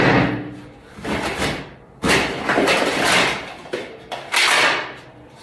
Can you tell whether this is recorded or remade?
recorded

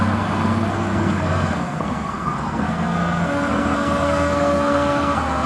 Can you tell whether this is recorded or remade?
remade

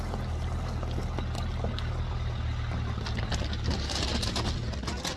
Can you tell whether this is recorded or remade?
recorded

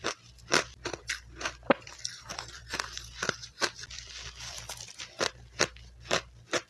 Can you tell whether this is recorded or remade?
remade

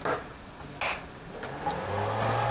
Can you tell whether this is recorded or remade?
recorded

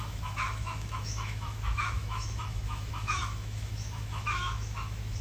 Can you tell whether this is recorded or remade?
remade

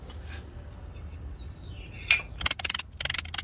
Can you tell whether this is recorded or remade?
recorded